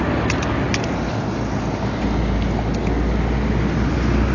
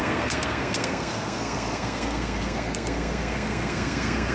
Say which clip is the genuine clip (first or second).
first